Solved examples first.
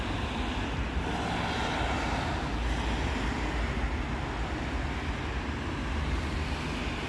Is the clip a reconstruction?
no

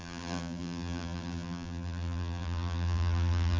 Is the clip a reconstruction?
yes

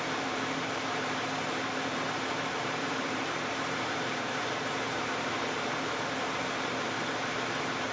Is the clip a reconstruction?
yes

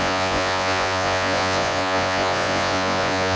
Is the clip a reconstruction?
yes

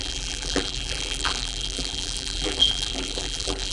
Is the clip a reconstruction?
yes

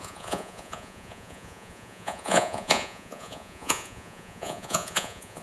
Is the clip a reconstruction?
yes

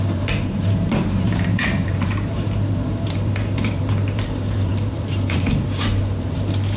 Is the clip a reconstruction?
yes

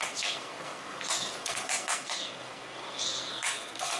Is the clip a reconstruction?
yes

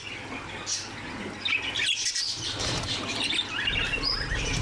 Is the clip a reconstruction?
no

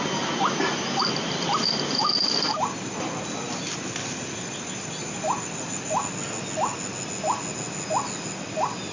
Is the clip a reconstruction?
no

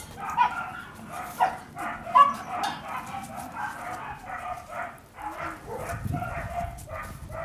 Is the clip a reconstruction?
no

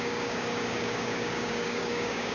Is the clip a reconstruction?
yes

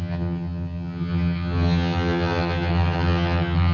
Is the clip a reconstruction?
yes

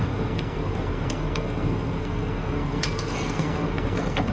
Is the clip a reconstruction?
yes